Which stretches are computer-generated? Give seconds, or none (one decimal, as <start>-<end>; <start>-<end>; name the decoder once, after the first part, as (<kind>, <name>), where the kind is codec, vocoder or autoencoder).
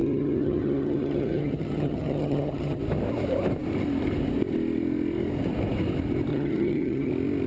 0.0-2.8 (vocoder, HiFi-GAN); 6.3-7.1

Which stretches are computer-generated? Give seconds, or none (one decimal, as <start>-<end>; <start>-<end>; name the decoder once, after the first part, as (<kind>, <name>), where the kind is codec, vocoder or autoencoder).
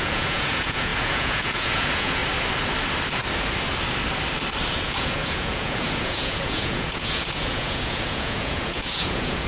0.0-2.2 (vocoder, Vocos); 4.7-9.5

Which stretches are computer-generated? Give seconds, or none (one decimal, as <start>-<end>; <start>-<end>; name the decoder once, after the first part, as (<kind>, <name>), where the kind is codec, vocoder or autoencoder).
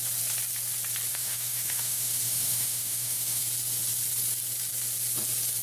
1.1-3.4 (autoencoder, DAC-VAE)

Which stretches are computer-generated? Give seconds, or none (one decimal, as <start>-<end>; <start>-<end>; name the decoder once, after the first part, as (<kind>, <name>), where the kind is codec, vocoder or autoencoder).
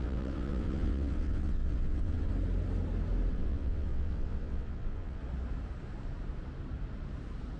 0.0-2.3 (vocoder, WaveNeXt); 3.3-5.2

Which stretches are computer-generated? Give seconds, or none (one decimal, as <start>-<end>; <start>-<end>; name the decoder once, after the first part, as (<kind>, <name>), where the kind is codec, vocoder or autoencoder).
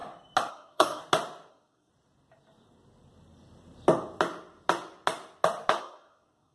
0.5-1.0 (codec, SNAC); 1.5-1.9; 5.8-6.5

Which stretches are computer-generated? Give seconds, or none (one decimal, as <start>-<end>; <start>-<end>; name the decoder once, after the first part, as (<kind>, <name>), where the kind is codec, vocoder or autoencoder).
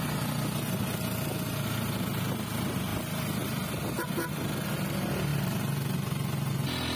none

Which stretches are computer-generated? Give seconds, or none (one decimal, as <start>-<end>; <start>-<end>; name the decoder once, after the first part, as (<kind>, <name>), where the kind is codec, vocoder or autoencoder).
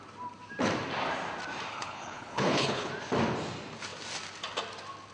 1.7-2.9 (codec, HILCodec)